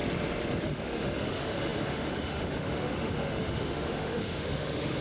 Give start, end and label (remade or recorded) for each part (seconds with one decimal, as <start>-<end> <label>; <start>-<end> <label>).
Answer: 0.0-0.6 recorded; 0.6-5.0 remade